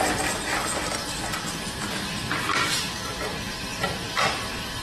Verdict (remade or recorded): recorded